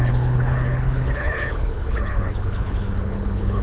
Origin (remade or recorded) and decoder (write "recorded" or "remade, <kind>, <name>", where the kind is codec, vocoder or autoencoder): remade, codec, HILCodec